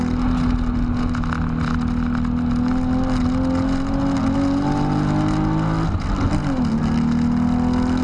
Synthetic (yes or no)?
no